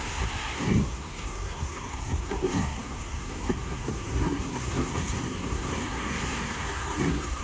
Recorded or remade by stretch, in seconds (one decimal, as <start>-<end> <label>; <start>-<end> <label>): 0.0-7.4 remade